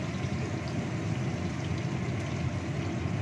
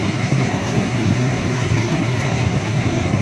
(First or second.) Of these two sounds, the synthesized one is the second